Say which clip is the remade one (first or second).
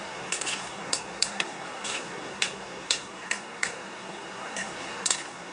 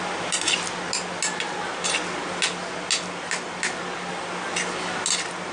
first